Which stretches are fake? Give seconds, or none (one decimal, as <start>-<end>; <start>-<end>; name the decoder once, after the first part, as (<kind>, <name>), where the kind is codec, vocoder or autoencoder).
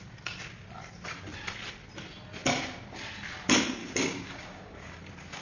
3.8-5.0 (codec, DAC)